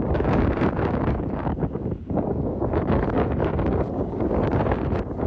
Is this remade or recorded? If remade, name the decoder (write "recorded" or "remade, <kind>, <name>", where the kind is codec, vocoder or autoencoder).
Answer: remade, codec, DAC